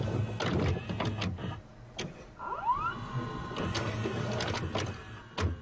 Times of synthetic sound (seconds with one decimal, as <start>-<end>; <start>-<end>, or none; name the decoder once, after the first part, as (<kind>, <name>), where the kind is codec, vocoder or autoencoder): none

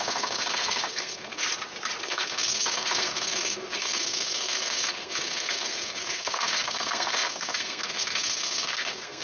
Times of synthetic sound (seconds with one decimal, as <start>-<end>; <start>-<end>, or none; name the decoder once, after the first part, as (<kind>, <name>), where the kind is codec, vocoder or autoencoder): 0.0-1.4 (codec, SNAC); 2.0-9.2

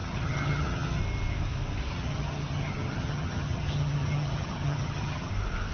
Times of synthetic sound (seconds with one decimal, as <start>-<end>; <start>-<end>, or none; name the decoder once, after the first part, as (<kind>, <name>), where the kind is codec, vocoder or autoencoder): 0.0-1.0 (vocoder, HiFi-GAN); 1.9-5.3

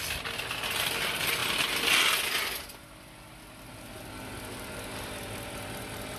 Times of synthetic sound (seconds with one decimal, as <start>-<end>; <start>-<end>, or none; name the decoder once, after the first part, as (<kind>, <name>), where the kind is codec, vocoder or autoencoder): none

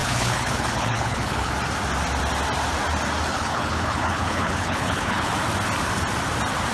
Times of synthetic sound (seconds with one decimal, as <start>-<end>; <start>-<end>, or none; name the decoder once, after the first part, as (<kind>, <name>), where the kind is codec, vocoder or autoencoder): 0.0-1.5 (codec, HILCodec); 3.3-5.3

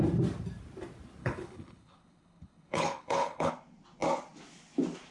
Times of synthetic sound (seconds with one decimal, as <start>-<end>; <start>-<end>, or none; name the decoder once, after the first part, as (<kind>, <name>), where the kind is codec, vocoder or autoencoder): 1.2-3.5 (codec, HILCodec)

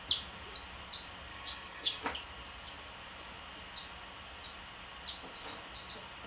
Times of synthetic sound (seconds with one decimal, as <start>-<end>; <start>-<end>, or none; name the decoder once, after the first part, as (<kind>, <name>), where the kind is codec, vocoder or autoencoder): 1.3-2.0 (codec, DAC)